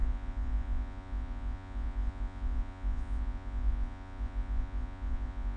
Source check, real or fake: fake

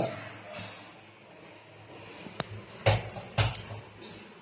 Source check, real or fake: real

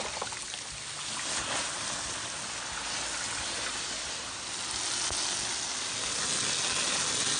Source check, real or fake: real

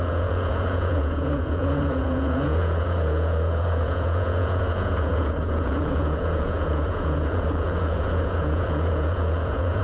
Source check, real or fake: fake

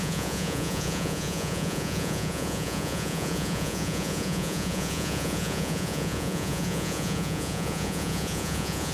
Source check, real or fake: fake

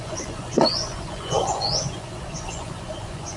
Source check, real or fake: fake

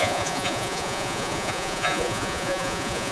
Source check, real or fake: fake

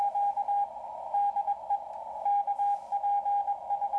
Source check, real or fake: real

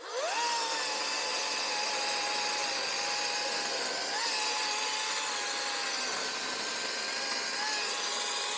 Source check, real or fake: real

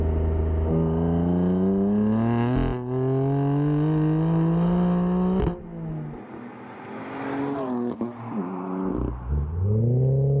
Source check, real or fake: real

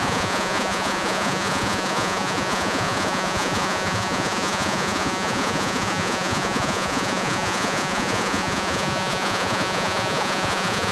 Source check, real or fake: fake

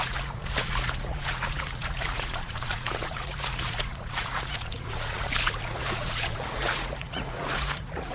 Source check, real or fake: fake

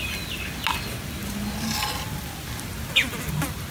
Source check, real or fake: real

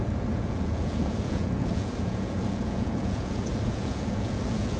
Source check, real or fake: fake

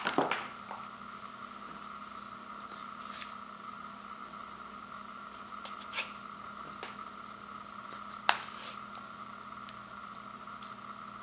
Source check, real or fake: real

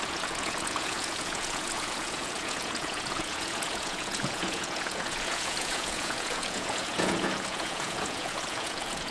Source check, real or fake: fake